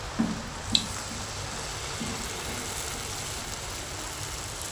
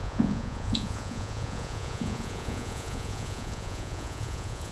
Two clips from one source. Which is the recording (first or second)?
first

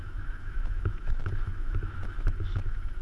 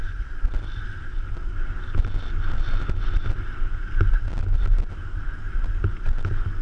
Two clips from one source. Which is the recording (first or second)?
second